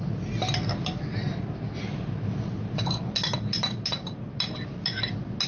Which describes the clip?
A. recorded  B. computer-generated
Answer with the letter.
A